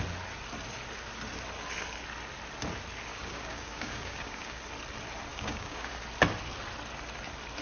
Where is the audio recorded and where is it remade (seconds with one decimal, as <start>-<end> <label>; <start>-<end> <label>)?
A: 0.0-3.1 recorded; 3.1-4.6 remade; 4.6-5.3 recorded; 5.3-5.9 remade; 5.9-7.6 recorded